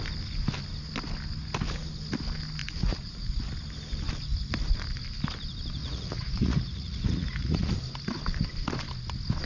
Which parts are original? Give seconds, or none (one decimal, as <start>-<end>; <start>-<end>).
0.0-2.6; 3.3-5.8; 7.7-9.5